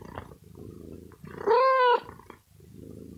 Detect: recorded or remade recorded